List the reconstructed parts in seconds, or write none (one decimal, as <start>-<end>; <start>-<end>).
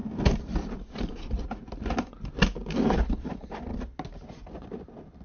0.0-1.5; 2.6-3.8